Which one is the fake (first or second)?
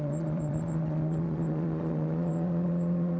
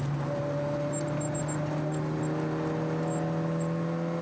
first